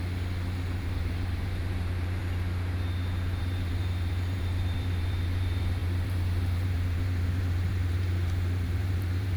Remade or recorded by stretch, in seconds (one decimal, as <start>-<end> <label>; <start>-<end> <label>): 0.0-0.8 recorded; 0.8-2.2 remade; 2.2-3.4 recorded; 3.4-9.4 remade